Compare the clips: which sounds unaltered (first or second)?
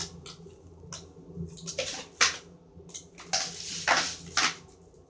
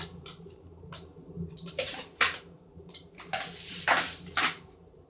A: first